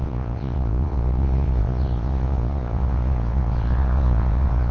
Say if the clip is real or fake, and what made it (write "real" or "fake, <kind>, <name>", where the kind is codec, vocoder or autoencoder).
fake, vocoder, Vocos